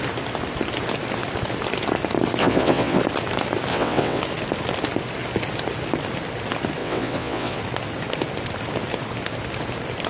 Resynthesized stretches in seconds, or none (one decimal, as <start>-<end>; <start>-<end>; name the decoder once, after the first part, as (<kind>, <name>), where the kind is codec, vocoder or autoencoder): 2.4-3.0 (vocoder, WaveNeXt); 3.7-4.2; 6.8-7.6